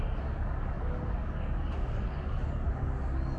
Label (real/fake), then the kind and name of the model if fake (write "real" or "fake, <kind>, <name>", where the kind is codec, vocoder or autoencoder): fake, codec, DAC